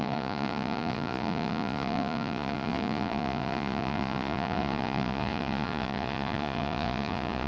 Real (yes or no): no